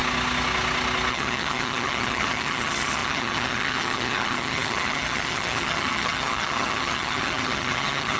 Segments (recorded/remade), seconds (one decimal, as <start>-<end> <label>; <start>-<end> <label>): 0.0-1.1 recorded; 1.1-8.2 remade